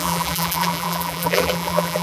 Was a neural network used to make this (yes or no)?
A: yes